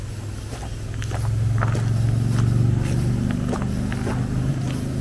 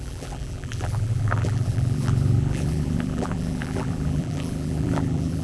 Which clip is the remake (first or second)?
second